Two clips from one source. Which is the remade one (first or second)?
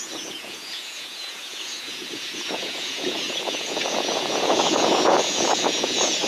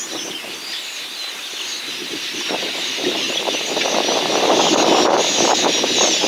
first